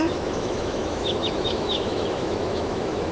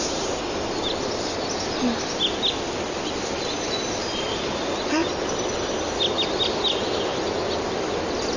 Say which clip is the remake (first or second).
first